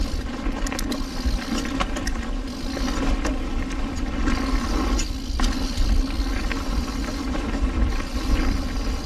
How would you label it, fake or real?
real